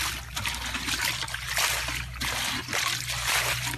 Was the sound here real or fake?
real